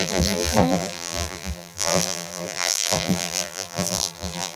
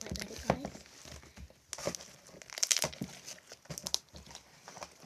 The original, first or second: second